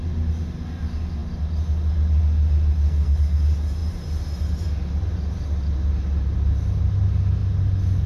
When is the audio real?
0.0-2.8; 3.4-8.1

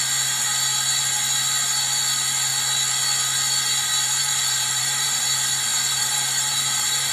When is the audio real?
0.0-4.2; 5.2-5.7